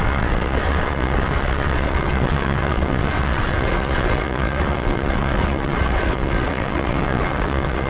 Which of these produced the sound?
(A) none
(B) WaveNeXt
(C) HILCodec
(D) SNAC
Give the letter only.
B